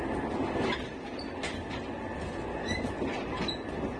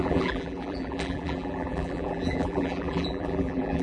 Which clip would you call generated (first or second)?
second